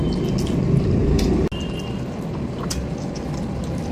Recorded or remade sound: recorded